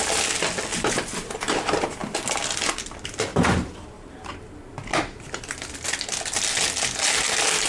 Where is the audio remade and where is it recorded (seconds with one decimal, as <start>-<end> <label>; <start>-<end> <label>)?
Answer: 0.0-0.7 recorded; 0.7-1.6 remade; 1.6-3.3 recorded; 3.3-4.5 remade; 4.5-7.7 recorded